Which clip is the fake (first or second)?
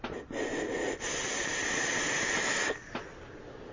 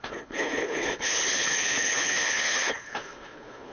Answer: second